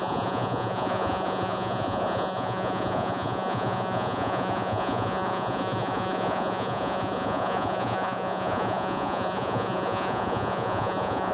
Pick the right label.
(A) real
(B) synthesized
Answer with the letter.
B